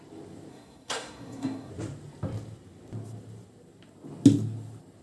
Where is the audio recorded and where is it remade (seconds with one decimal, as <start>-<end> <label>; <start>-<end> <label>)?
0.0-0.5 recorded; 0.5-1.7 remade; 1.7-5.0 recorded